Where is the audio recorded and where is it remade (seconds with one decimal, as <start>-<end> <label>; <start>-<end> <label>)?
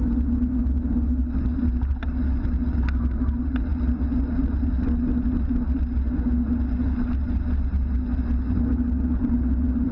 0.0-9.9 recorded